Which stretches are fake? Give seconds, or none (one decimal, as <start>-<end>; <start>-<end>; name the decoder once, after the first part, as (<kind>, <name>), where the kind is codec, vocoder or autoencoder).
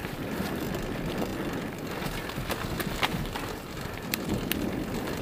0.0-0.6 (vocoder, BigVGAN v2); 3.1-4.2